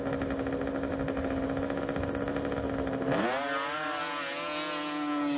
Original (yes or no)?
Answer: yes